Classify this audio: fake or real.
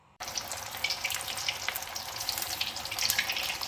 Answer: fake